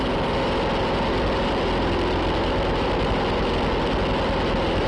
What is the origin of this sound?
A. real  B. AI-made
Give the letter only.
A